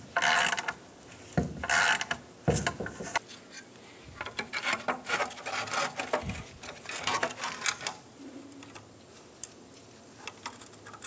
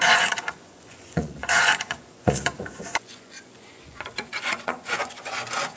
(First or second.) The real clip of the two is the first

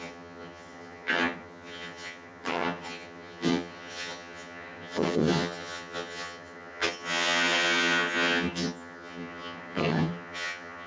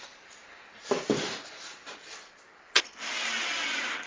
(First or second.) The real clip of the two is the second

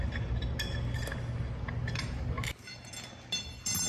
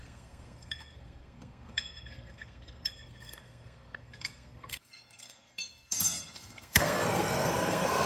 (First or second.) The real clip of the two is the first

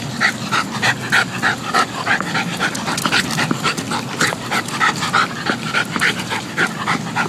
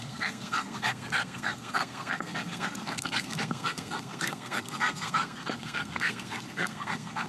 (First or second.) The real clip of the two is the first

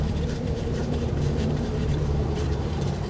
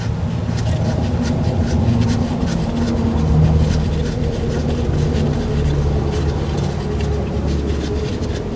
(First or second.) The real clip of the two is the second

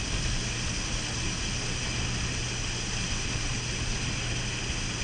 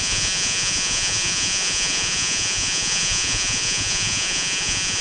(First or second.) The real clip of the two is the first